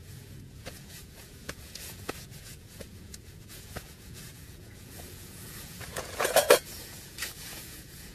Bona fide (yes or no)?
no